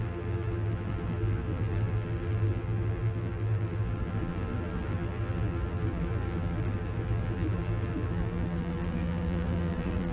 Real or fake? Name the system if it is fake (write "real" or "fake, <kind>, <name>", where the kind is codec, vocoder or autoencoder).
fake, vocoder, BigVGAN v2